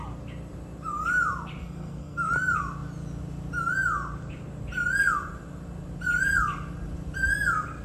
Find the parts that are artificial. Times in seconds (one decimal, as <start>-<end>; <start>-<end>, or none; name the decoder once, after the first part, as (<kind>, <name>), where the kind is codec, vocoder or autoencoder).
1.6-2.3 (codec, SNAC)